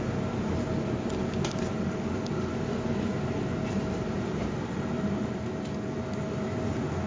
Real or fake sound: real